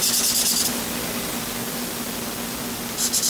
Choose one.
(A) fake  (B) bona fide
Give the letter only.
B